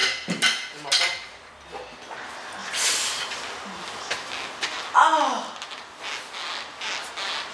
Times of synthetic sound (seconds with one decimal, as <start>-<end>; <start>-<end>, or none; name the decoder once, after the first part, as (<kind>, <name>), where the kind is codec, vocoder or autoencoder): none